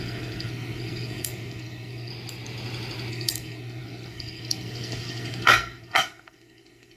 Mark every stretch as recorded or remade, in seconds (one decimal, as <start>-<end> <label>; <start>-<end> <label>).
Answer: 0.0-2.1 remade; 2.1-3.1 recorded; 3.1-7.0 remade